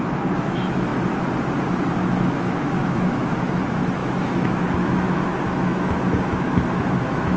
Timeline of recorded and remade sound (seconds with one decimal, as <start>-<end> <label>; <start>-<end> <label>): 0.0-0.9 remade; 0.9-2.0 recorded; 2.0-7.4 remade